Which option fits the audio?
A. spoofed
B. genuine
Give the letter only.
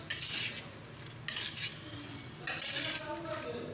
B